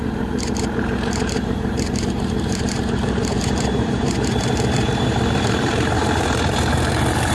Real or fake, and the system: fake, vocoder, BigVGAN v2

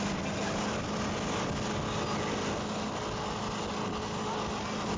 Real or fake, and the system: real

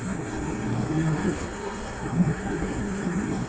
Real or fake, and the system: fake, codec, SNAC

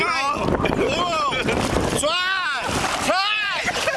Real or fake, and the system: real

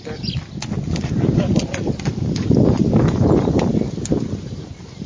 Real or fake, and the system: real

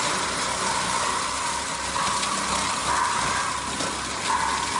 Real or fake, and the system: real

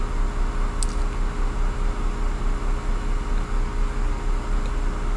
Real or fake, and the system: real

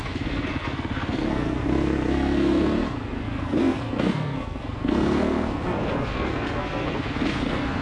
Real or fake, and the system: fake, codec, SNAC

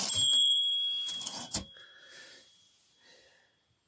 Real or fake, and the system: fake, vocoder, BigVGAN v2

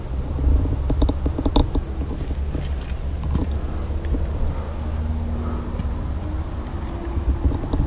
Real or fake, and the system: real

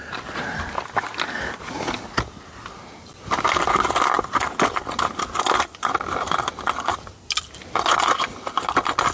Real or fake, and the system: real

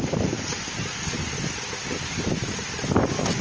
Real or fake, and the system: real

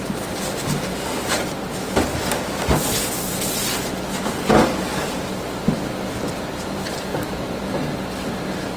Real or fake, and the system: real